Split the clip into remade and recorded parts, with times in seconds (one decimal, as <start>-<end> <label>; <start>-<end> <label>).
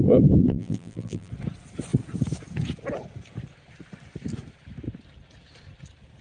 0.0-0.4 recorded; 0.4-1.3 remade; 1.3-6.2 recorded